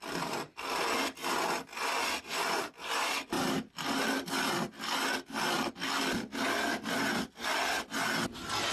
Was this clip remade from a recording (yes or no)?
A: no